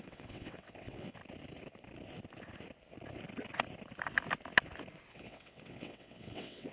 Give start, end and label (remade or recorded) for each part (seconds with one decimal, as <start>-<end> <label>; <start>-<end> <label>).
0.0-1.2 remade; 1.2-5.1 recorded; 5.1-6.7 remade